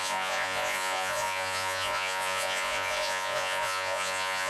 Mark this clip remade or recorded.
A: remade